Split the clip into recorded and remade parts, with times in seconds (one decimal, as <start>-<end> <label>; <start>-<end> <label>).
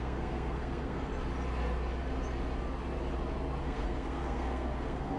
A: 0.0-1.1 remade; 1.1-3.6 recorded; 3.6-5.2 remade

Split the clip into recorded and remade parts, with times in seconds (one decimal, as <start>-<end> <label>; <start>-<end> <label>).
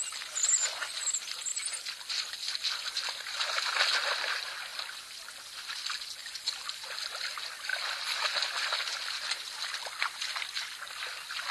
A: 0.0-6.2 recorded; 6.2-7.0 remade; 7.0-11.5 recorded